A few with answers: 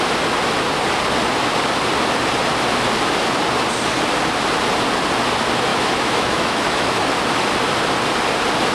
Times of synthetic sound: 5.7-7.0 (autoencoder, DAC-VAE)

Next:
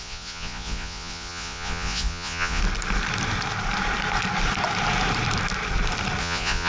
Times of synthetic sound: 0.0-2.6 (vocoder, Vocos); 6.2-6.7

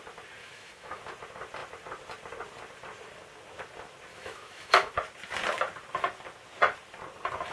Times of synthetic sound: 0.4-1.0 (autoencoder, DAC-VAE); 4.1-4.9

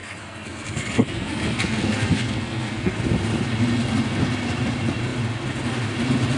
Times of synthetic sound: 0.0-3.0 (codec, SNAC)

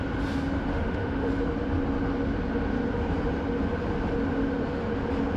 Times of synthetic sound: 0.7-1.3 (autoencoder, DAC-VAE)

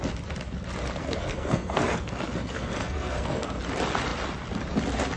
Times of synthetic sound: 1.0-3.6 (codec, SNAC)

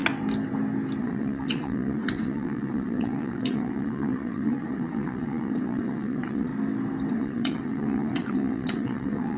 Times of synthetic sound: 1.0-6.5 (vocoder, WaveNeXt); 7.1-9.4

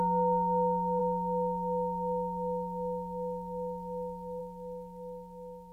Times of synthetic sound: none